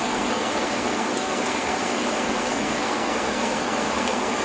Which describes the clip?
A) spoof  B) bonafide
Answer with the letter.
A